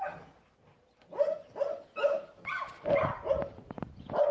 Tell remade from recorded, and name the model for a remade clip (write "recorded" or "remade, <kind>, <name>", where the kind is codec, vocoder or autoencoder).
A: recorded